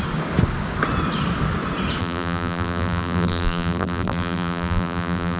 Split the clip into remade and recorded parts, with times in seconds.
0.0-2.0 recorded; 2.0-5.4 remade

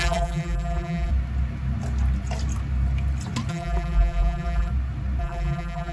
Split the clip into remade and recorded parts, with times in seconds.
0.0-1.1 remade; 1.1-3.5 recorded; 3.5-4.7 remade; 4.7-5.2 recorded; 5.2-5.9 remade

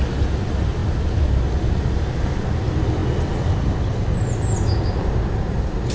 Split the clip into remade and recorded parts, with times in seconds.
0.0-5.9 recorded

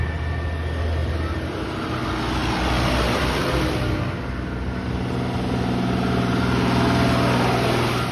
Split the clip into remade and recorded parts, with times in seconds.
0.0-1.0 recorded; 1.0-1.6 remade; 1.6-8.1 recorded

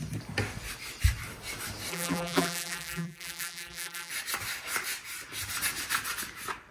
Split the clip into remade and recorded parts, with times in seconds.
0.0-1.9 recorded; 1.9-4.1 remade; 4.1-6.7 recorded

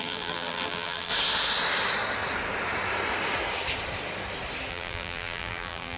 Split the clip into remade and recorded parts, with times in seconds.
0.0-1.1 remade; 1.1-4.7 recorded; 4.7-6.0 remade

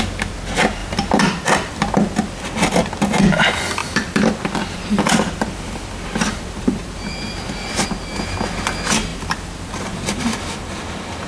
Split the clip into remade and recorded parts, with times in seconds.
0.0-0.8 recorded; 0.8-2.5 remade; 2.5-3.8 recorded; 3.8-7.9 remade; 7.9-9.1 recorded; 9.1-9.7 remade; 9.7-11.3 recorded

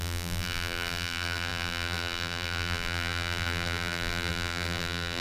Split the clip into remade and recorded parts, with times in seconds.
0.0-5.2 remade